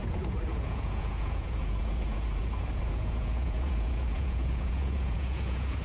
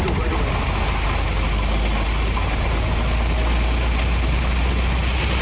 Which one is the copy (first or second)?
first